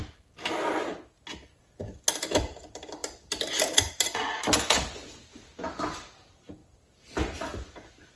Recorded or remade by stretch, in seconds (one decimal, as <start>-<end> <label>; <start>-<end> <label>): 0.0-8.2 recorded